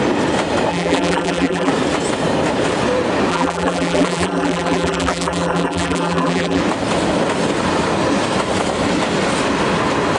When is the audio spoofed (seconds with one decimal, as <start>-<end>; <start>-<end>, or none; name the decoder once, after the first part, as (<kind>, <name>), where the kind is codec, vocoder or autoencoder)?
0.7-1.7 (vocoder, BigVGAN v2); 3.3-6.6